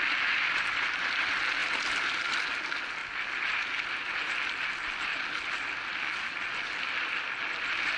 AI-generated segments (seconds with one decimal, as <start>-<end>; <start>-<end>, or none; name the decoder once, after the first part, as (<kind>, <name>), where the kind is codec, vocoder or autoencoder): 1.6-2.2 (vocoder, BigVGAN v2); 3.0-3.9